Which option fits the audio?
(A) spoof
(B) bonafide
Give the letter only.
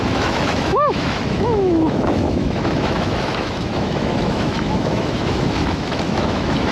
A